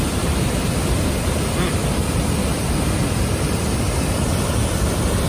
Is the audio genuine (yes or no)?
yes